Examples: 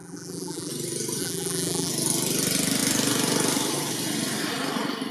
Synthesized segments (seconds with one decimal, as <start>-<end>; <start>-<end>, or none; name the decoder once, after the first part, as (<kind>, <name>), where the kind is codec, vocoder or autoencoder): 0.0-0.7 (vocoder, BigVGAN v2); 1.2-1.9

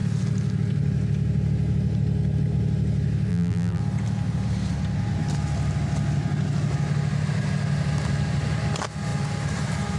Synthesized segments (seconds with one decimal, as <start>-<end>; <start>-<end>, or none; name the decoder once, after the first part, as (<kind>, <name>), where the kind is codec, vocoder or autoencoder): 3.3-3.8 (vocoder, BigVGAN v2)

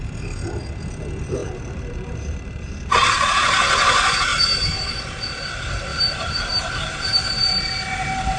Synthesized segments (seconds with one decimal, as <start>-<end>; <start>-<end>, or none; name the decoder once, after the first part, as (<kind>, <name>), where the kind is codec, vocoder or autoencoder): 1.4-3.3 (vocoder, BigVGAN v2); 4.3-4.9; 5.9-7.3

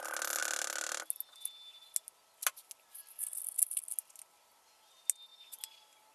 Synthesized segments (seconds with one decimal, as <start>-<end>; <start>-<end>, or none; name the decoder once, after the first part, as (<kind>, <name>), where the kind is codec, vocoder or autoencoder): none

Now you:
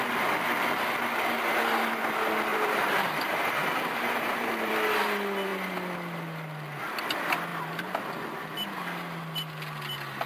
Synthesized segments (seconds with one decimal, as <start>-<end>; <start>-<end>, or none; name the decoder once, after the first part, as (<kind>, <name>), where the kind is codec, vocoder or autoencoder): 2.5-4.7 (vocoder, BigVGAN v2); 7.5-8.0

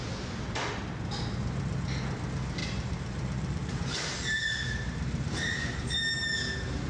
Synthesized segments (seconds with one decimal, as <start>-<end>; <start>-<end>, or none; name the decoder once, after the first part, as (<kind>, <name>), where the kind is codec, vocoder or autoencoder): 2.6-6.2 (vocoder, BigVGAN v2)

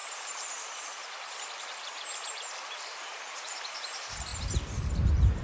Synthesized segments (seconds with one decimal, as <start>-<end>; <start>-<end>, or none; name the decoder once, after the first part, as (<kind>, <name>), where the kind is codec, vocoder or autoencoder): 0.0-4.3 (vocoder, BigVGAN v2); 4.9-5.4